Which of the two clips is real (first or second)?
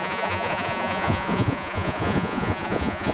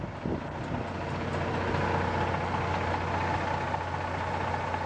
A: second